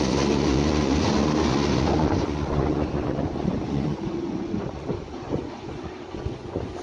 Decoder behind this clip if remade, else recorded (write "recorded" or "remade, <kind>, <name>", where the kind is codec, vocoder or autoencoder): remade, vocoder, Vocos